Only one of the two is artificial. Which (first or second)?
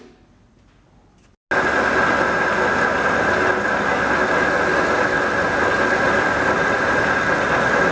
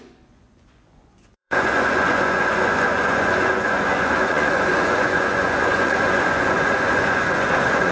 second